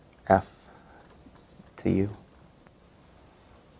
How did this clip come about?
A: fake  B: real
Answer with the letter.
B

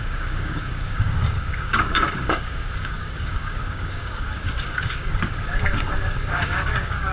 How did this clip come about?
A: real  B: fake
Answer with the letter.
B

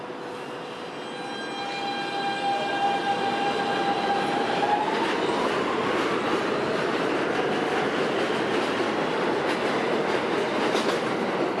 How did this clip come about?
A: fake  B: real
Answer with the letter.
B